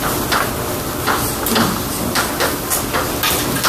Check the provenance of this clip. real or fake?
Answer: real